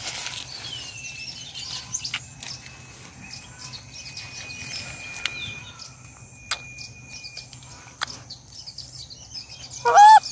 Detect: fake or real real